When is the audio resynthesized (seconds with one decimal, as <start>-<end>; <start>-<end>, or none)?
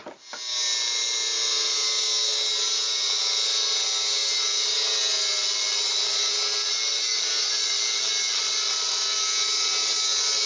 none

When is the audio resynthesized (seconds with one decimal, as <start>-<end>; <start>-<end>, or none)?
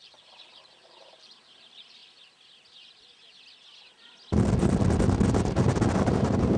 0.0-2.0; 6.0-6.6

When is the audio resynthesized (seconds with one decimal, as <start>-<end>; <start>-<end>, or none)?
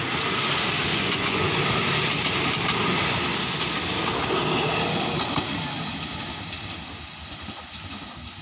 0.9-1.6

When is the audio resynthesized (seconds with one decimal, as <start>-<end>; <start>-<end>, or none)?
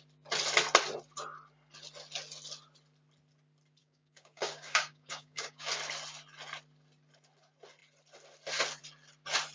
3.8-5.7